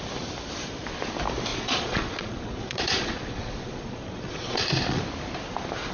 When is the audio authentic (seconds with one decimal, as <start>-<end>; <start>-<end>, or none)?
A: 0.0-1.5; 5.0-5.9